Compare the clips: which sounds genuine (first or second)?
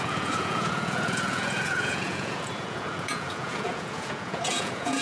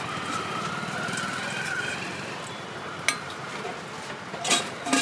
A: second